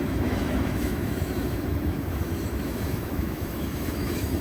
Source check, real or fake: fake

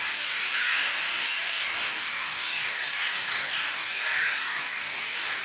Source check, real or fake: fake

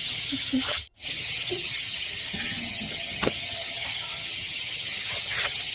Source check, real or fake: fake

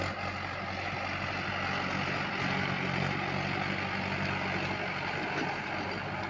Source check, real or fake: real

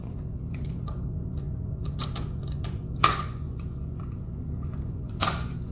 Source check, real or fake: fake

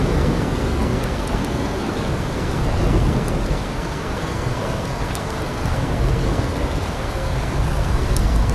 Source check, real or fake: fake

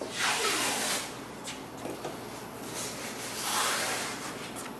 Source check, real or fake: real